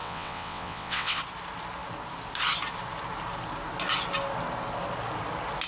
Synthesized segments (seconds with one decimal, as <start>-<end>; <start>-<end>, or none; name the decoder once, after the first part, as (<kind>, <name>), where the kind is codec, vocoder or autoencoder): 0.0-1.2 (vocoder, WaveNeXt)

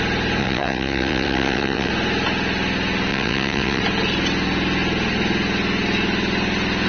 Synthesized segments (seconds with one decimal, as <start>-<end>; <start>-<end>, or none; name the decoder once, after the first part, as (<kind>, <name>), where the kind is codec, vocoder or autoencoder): 0.4-1.9 (vocoder, WaveNeXt); 3.1-3.8

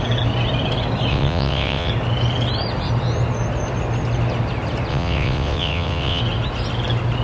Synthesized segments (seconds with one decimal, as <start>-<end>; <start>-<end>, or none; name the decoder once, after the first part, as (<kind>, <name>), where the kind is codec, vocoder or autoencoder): 1.1-1.9 (vocoder, WaveNeXt); 4.9-6.2

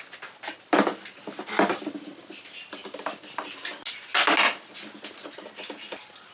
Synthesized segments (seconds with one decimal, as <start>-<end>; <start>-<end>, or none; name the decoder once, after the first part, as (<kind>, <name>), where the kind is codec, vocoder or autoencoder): none

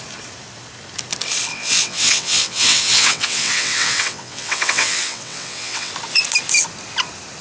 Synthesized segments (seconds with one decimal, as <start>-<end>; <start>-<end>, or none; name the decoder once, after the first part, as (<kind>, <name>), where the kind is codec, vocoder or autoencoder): 1.5-5.9 (vocoder, WaveNeXt)

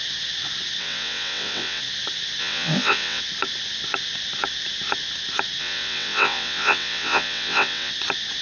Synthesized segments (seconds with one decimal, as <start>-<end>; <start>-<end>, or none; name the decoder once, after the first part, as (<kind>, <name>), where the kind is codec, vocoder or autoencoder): 0.8-1.8 (vocoder, WaveNeXt); 2.4-3.2; 5.6-7.9